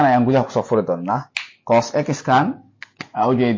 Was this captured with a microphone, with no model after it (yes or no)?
yes